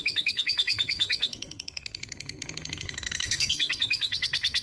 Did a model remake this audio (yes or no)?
yes